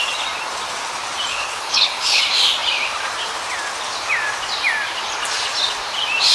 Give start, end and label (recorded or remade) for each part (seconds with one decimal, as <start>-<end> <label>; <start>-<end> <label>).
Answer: 0.0-1.3 recorded; 1.3-2.2 remade; 2.2-6.3 recorded